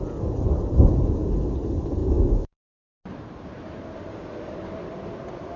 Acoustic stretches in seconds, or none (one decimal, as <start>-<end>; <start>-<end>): 0.0-2.0; 3.0-5.6